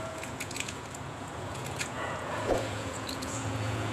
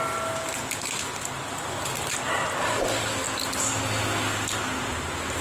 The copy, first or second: first